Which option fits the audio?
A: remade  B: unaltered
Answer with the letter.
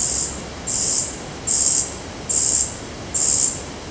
B